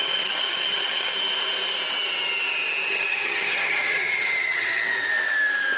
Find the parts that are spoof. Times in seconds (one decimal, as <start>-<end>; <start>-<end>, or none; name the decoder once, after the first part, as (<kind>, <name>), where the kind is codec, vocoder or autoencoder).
0.0-1.1 (vocoder, HiFi-GAN); 2.9-4.8